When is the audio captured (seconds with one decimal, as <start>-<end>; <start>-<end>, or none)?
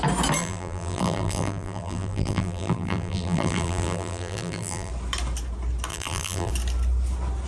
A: 0.0-0.4; 4.9-5.9; 6.5-7.5